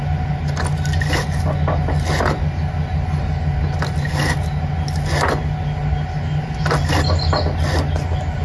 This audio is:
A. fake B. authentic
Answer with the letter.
B